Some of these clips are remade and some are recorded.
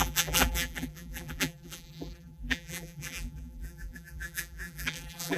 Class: remade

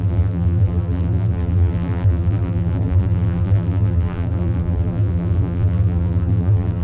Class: remade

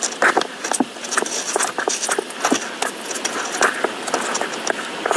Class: recorded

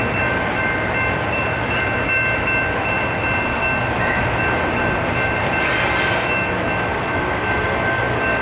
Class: recorded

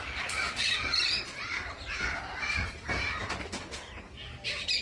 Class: remade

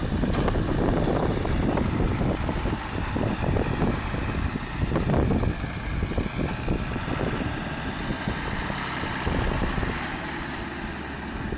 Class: recorded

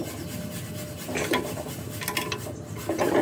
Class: recorded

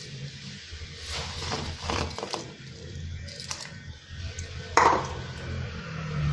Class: remade